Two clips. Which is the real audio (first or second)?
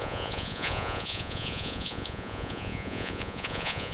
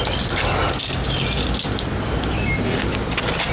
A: second